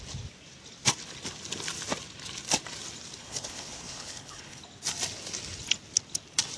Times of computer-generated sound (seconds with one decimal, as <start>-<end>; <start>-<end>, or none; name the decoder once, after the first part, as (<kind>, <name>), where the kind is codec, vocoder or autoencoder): 3.2-4.6 (codec, HILCodec)